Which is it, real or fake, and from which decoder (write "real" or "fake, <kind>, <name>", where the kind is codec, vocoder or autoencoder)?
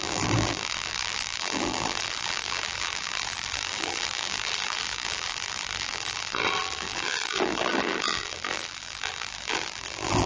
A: fake, vocoder, BigVGAN v2